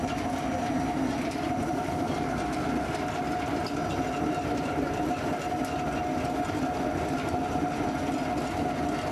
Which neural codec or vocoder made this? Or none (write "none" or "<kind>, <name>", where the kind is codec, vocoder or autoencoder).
none